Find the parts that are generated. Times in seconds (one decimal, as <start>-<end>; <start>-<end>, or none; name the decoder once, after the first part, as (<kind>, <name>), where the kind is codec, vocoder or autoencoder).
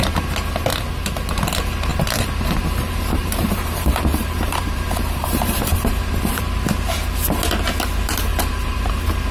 1.9-6.6 (vocoder, BigVGAN v2); 8.3-8.9